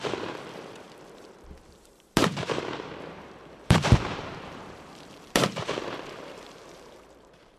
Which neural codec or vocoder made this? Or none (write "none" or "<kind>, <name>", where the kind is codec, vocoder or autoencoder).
vocoder, BigVGAN v2